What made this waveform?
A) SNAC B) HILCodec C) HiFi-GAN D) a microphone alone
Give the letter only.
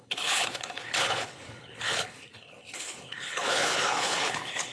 B